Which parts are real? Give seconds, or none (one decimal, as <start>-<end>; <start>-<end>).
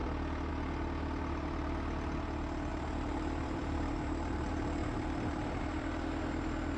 0.0-2.7; 5.6-6.8